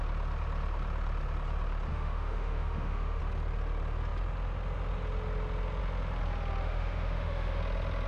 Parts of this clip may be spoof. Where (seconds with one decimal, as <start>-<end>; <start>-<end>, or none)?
1.9-3.2; 6.6-7.6